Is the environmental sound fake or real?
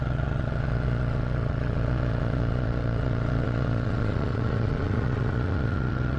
fake